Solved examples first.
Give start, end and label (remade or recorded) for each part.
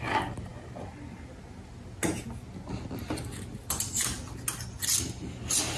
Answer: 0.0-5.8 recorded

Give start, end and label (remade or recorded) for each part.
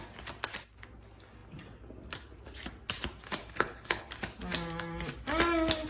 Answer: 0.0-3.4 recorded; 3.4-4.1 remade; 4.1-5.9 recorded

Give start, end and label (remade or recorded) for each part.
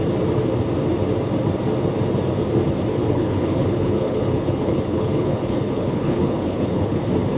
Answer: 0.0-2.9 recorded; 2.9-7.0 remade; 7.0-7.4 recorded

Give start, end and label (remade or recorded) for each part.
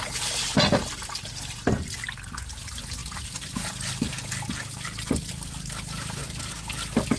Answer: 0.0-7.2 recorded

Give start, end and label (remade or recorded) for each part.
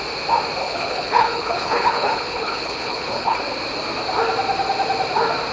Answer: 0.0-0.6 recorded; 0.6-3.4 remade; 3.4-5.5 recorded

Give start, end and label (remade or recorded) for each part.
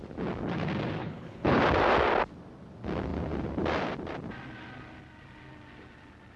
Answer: 0.0-1.0 recorded; 1.0-1.6 remade; 1.6-6.4 recorded